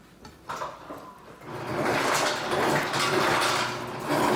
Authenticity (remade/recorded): recorded